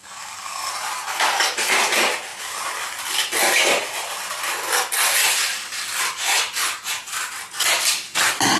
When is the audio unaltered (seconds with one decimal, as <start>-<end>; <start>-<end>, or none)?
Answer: 0.7-8.6